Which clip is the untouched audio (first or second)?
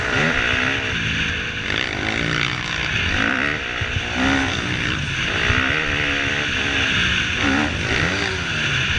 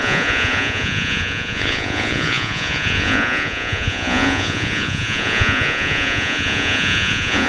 first